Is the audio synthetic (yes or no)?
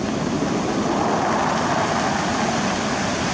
no